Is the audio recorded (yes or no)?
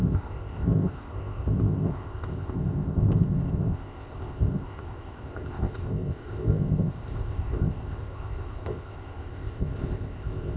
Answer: no